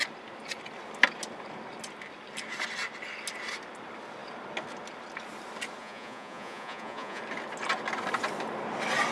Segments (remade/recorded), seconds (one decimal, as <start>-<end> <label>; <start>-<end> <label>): 0.0-5.8 recorded; 5.8-7.2 remade; 7.2-9.1 recorded